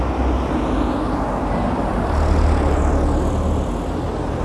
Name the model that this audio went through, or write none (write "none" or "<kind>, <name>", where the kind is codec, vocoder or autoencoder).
none